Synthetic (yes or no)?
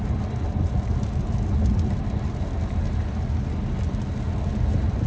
no